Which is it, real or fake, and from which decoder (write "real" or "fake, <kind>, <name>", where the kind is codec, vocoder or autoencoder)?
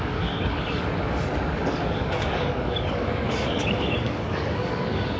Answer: fake, codec, DAC